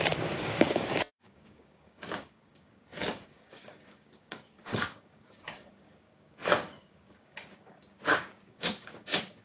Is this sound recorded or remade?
remade